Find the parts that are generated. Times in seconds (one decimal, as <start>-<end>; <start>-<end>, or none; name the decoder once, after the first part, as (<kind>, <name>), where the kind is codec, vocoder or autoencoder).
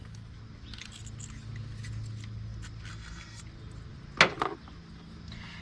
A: 2.9-3.4 (codec, SNAC)